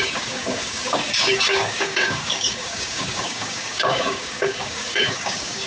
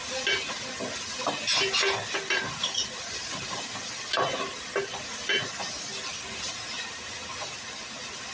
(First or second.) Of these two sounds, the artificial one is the first